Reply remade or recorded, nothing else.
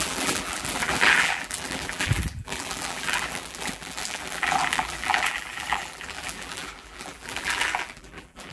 remade